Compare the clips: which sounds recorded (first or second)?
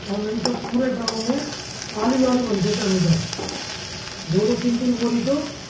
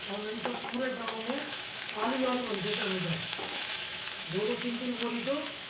first